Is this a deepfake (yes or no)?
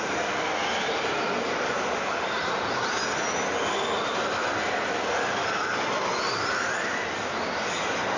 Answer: no